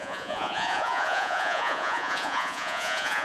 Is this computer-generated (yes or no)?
yes